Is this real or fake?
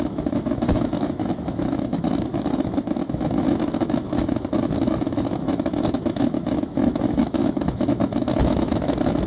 fake